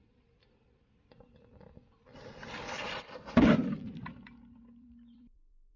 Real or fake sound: fake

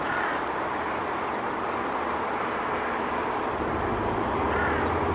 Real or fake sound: real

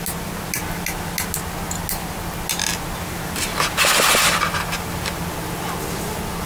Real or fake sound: real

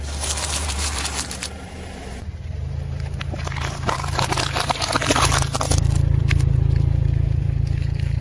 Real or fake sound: fake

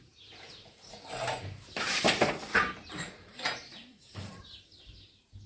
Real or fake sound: fake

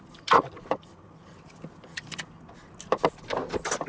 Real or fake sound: real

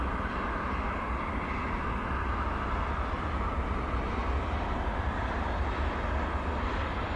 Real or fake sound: real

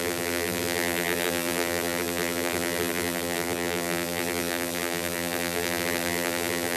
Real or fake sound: fake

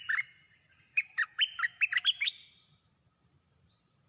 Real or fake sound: fake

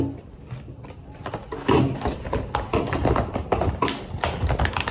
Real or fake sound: fake